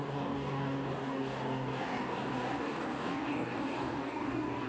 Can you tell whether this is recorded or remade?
remade